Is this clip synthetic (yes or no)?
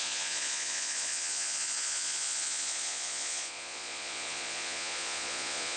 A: yes